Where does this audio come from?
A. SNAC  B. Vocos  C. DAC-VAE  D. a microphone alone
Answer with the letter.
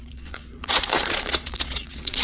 B